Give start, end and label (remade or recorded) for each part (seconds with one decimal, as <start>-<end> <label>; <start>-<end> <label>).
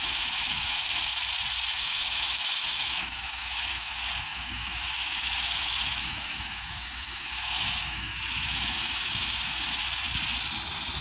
0.0-1.1 remade; 1.1-1.7 recorded; 1.7-9.8 remade; 9.8-11.0 recorded